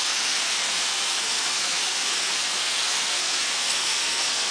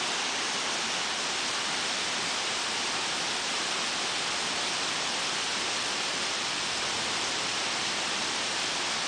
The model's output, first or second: first